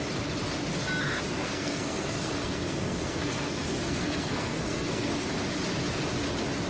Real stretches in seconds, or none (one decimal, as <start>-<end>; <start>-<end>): 0.0-1.4; 5.1-6.7